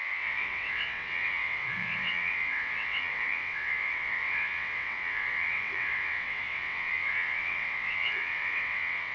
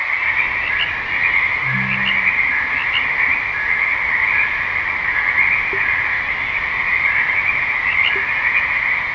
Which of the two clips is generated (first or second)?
first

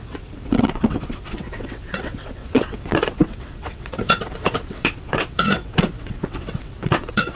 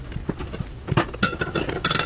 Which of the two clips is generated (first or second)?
first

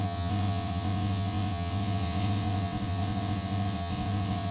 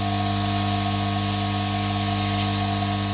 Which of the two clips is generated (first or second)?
first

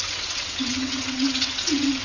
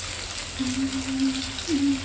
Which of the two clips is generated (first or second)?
first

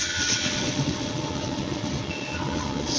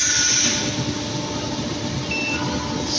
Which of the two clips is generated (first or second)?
first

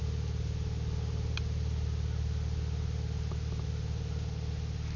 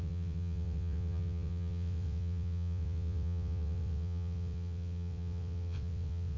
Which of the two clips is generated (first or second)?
second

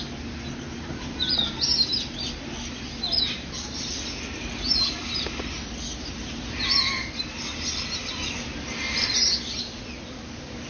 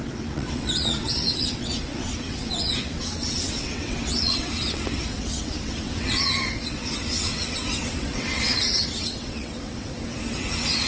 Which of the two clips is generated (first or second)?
second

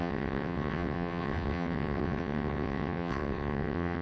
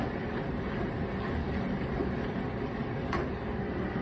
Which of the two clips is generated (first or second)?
first